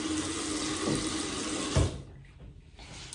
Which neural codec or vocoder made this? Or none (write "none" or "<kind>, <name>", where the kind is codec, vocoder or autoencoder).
none